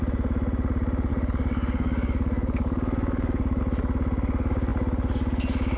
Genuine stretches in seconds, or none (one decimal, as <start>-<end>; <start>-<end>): 0.0-1.1; 3.6-5.8